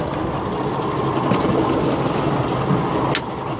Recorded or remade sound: recorded